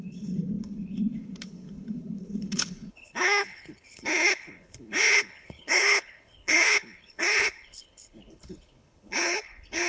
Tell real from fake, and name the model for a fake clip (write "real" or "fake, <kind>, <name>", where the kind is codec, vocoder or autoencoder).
fake, codec, HILCodec